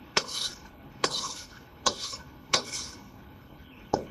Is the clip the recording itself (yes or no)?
no